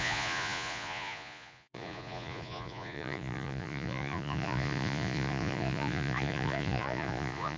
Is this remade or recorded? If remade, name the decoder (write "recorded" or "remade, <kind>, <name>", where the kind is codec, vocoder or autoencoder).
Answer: remade, vocoder, Vocos